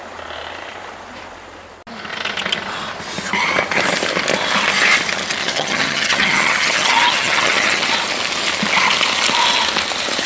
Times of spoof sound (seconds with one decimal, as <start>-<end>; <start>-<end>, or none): 5.4-7.9

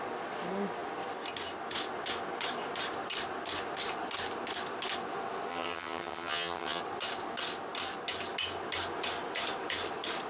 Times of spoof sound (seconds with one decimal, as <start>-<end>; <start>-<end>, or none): 5.5-6.8

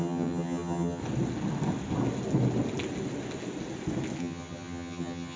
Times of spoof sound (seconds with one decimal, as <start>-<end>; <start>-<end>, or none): 0.0-1.0; 4.2-5.4

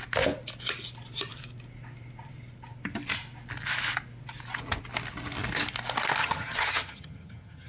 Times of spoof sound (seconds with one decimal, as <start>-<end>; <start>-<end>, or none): 6.2-7.7

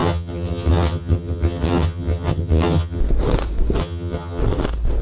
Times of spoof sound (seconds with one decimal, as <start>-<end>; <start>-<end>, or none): 0.0-3.0; 3.8-4.4